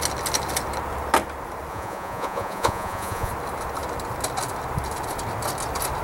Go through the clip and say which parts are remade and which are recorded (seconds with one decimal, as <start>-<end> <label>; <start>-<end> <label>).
0.0-1.7 recorded; 1.7-3.3 remade; 3.3-6.0 recorded

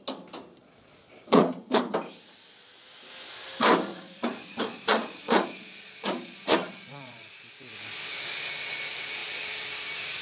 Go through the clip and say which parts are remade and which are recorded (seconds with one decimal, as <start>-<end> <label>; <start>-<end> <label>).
0.0-0.6 recorded; 0.6-1.8 remade; 1.8-3.9 recorded; 3.9-7.3 remade; 7.3-10.2 recorded

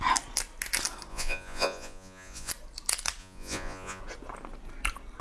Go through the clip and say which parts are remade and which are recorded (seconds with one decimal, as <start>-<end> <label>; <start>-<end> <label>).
0.0-1.1 recorded; 1.1-2.5 remade; 2.5-3.2 recorded; 3.2-4.0 remade; 4.0-5.2 recorded

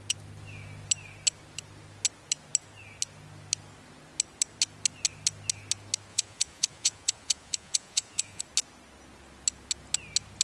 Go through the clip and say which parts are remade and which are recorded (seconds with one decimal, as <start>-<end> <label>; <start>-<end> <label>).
0.0-6.1 recorded; 6.1-8.4 remade; 8.4-10.4 recorded

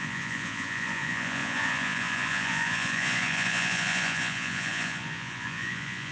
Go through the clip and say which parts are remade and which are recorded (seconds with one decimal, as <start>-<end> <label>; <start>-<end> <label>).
0.0-6.1 remade

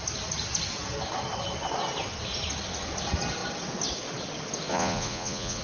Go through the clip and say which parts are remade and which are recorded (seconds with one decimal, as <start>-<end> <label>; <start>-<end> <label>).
0.0-4.7 recorded; 4.7-5.6 remade